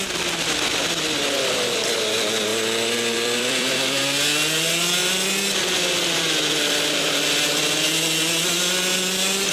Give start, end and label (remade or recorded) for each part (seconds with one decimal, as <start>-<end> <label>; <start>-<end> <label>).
0.0-2.5 recorded; 2.5-4.0 remade; 4.0-9.5 recorded